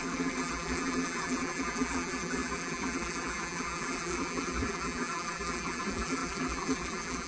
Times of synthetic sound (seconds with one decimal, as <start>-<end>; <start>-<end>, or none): 0.0-7.3